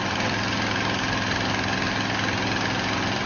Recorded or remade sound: recorded